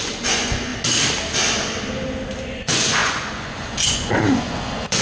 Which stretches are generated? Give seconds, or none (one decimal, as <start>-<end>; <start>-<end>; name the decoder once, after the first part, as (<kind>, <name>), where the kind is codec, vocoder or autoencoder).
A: 0.0-0.7 (vocoder, Vocos); 2.4-5.0